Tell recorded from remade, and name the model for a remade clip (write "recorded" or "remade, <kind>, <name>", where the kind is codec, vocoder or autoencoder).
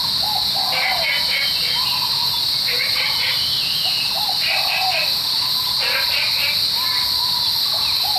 recorded